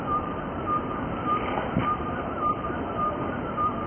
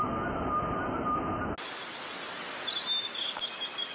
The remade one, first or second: first